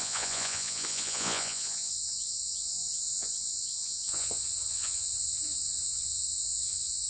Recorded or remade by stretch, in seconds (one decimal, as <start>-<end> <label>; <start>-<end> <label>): 0.0-7.1 remade